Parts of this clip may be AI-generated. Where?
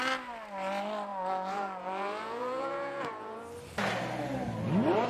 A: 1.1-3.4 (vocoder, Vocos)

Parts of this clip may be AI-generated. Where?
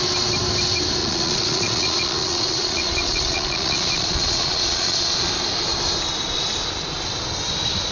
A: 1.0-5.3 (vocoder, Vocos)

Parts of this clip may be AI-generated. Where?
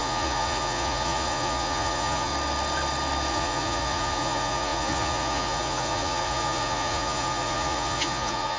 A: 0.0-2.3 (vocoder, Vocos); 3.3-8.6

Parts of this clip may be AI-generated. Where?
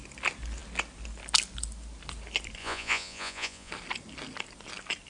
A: 2.6-3.7 (vocoder, Vocos)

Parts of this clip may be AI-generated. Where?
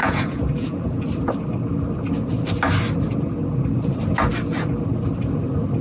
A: 0.0-1.1 (vocoder, Vocos)